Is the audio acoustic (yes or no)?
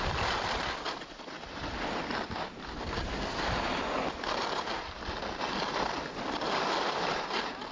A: yes